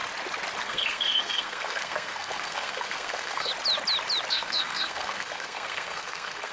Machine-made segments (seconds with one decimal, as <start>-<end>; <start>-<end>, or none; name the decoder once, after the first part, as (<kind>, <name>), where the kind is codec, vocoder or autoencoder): 0.6-3.5 (codec, SNAC); 4.3-6.5